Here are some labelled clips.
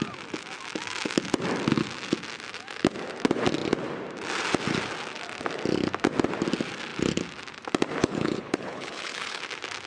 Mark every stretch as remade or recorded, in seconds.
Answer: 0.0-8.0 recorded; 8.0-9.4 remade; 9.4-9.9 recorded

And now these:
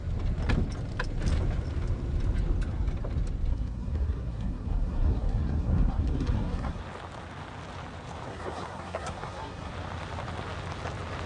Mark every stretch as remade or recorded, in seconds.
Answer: 0.0-3.5 recorded; 3.5-6.8 remade; 6.8-8.3 recorded; 8.3-9.7 remade; 9.7-11.3 recorded

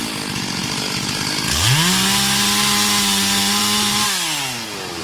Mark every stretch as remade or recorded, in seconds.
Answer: 0.0-5.0 recorded

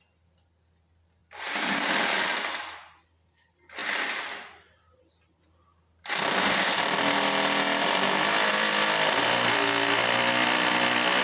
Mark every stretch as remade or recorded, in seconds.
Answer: 0.0-3.8 recorded; 3.8-5.0 remade; 5.0-5.7 recorded; 5.7-6.8 remade; 6.8-8.5 recorded; 8.5-11.2 remade

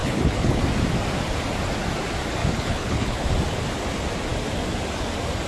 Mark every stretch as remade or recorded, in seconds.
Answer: 0.0-0.6 remade; 0.6-2.4 recorded; 2.4-3.3 remade; 3.3-5.5 recorded